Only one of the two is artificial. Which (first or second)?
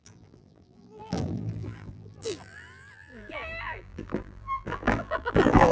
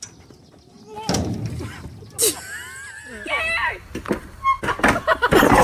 first